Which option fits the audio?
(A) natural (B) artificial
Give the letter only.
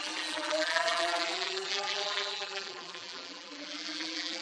B